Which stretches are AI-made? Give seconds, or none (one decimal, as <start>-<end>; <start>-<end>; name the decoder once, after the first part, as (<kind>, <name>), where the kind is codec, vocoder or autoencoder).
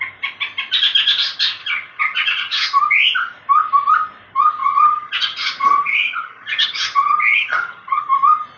1.6-2.8 (vocoder, HiFi-GAN); 4.6-8.0